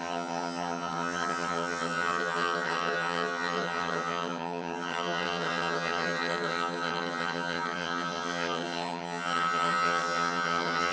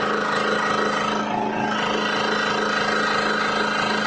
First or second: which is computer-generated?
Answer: first